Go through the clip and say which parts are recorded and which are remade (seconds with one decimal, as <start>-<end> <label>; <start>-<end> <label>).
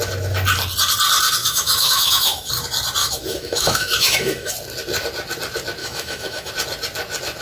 0.0-1.4 recorded; 1.4-2.5 remade; 2.5-3.0 recorded; 3.0-4.5 remade; 4.5-5.8 recorded; 5.8-6.5 remade; 6.5-7.4 recorded